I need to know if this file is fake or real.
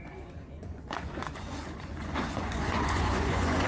fake